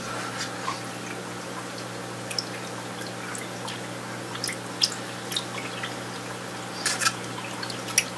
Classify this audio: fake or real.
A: real